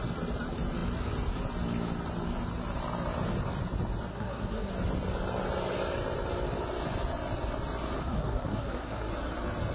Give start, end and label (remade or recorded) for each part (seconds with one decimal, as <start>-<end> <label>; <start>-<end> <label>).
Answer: 0.0-4.1 recorded; 4.1-4.7 remade; 4.7-8.0 recorded; 8.0-9.1 remade; 9.1-9.7 recorded